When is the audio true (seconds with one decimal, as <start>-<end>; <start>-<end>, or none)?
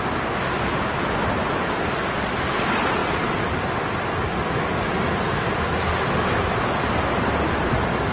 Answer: 0.0-8.1